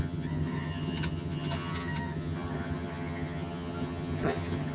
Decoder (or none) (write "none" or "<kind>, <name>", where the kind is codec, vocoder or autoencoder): vocoder, HiFi-GAN